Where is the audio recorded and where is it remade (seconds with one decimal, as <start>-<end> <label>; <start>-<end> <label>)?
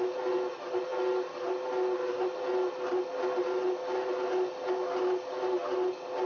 0.0-6.3 recorded